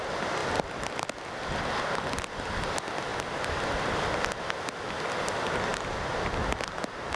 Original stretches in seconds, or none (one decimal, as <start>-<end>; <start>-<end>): 0.0-7.2